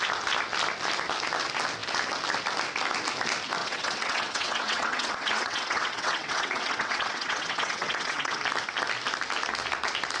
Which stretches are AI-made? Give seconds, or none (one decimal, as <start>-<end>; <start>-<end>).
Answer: 3.6-8.4